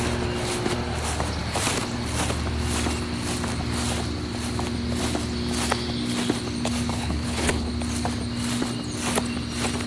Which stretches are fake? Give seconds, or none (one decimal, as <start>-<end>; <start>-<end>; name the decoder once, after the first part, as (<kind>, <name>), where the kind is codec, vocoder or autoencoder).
6.9-7.7 (codec, HILCodec)